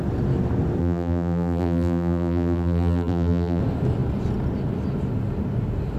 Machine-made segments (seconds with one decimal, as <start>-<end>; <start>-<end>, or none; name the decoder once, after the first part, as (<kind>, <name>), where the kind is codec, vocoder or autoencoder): 0.8-3.6 (vocoder, BigVGAN v2)